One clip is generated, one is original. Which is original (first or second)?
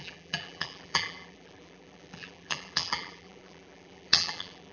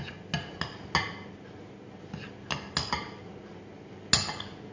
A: second